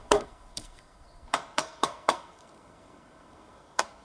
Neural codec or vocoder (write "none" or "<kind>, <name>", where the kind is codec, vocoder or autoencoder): codec, SNAC